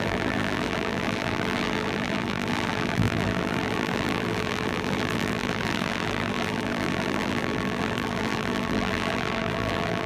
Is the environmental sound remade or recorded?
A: remade